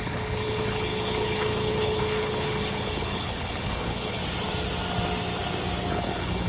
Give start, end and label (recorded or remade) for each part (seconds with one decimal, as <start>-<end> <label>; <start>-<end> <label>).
0.0-4.2 remade; 4.2-5.9 recorded; 5.9-6.5 remade